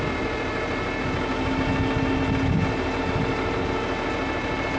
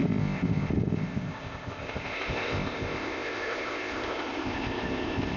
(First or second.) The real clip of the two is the first